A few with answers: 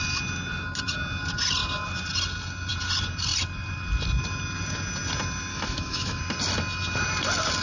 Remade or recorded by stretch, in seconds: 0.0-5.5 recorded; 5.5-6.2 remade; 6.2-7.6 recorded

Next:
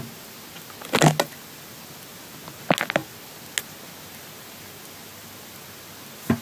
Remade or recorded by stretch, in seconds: 0.0-6.4 recorded

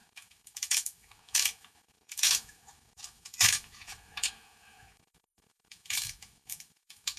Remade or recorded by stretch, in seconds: 0.0-7.2 remade

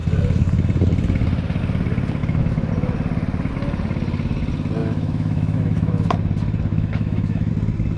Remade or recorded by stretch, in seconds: 0.0-2.2 recorded; 2.2-2.7 remade; 2.7-4.8 recorded; 4.8-6.1 remade; 6.1-6.7 recorded; 6.7-7.5 remade; 7.5-8.0 recorded

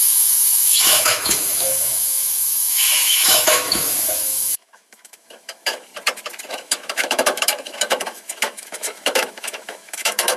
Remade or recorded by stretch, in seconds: 0.0-5.9 remade; 5.9-6.5 recorded; 6.5-10.4 remade

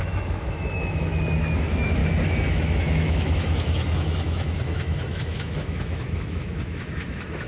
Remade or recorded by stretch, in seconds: 0.0-2.0 remade; 2.0-2.5 recorded; 2.5-7.5 remade

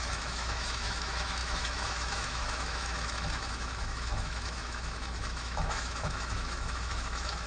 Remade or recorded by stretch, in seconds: 0.0-7.5 remade